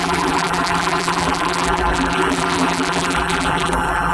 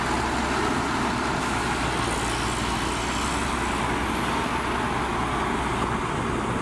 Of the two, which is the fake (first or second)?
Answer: first